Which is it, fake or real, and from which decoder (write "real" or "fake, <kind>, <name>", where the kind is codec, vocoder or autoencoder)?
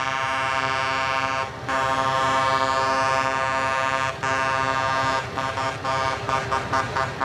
real